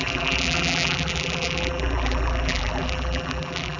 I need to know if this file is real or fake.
fake